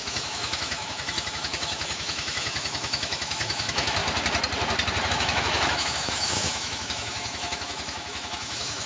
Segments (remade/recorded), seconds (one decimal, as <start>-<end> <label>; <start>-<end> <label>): 0.0-4.0 remade; 4.0-5.1 recorded; 5.1-8.9 remade